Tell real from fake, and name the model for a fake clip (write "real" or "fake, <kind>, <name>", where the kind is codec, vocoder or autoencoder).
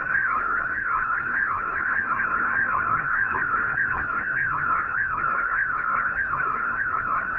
fake, codec, SNAC